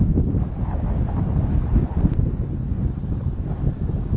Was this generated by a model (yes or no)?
no